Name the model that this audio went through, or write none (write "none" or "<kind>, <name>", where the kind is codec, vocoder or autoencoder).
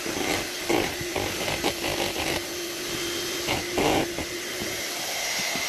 none